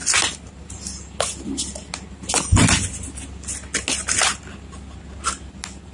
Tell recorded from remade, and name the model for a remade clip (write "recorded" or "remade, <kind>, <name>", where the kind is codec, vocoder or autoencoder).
recorded